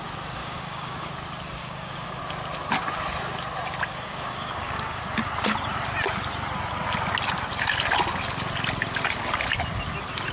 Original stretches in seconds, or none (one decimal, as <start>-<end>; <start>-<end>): 0.0-0.4; 1.1-1.6; 2.2-3.9; 5.0-10.3